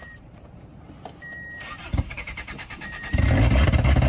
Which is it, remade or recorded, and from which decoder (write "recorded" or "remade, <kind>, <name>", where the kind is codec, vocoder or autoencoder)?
remade, vocoder, BigVGAN v2